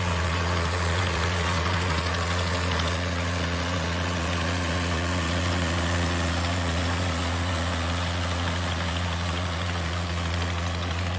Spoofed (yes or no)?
yes